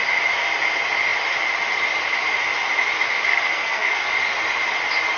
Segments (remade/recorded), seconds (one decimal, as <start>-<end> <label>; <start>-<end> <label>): 0.0-3.3 recorded; 3.3-4.1 remade; 4.1-5.2 recorded